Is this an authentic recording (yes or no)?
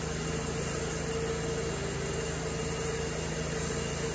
yes